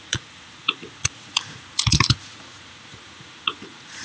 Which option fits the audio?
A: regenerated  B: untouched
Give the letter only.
A